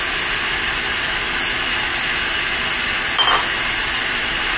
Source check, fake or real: real